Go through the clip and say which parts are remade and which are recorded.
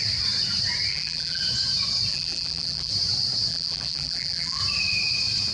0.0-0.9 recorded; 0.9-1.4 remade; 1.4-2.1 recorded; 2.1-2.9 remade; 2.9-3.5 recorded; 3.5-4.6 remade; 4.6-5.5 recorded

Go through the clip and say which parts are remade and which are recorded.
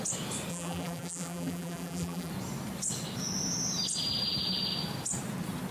0.0-0.5 recorded; 0.5-2.3 remade; 2.3-5.7 recorded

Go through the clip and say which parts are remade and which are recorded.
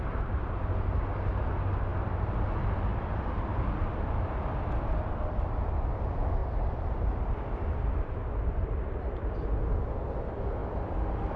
0.0-1.9 recorded; 1.9-2.5 remade; 2.5-2.9 recorded; 2.9-5.9 remade; 5.9-6.4 recorded; 6.4-8.0 remade; 8.0-11.4 recorded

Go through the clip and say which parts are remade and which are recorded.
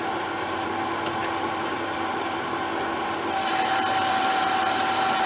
0.0-1.2 recorded; 1.2-2.4 remade; 2.4-2.9 recorded; 2.9-4.2 remade; 4.2-5.3 recorded